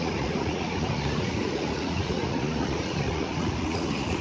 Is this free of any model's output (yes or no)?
no